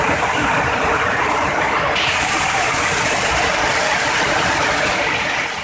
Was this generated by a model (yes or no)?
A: yes